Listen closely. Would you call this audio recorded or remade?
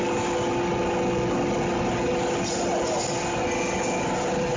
recorded